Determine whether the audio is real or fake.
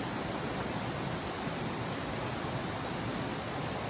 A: real